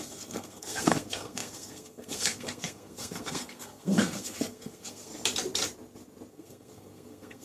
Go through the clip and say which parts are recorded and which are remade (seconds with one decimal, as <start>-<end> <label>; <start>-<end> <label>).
0.0-5.1 remade; 5.1-6.3 recorded; 6.3-7.4 remade